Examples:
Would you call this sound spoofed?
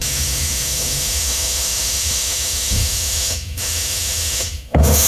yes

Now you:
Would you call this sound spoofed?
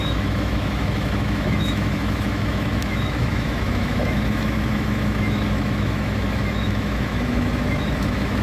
yes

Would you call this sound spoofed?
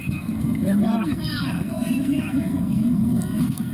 yes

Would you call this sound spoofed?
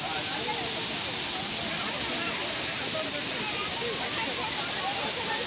no